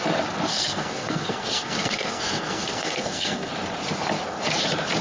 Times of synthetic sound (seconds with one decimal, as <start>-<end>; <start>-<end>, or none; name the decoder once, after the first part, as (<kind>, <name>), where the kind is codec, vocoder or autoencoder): 0.5-3.5 (codec, SNAC)